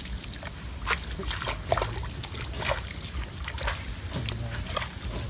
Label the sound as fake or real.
real